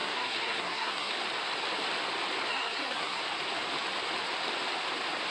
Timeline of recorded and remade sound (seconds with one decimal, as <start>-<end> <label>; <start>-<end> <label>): 0.0-1.1 remade; 1.1-2.5 recorded; 2.5-3.2 remade; 3.2-5.3 recorded